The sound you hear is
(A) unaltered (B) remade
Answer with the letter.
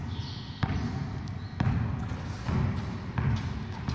A